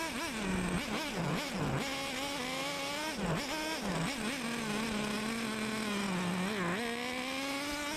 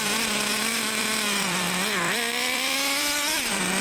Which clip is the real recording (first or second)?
first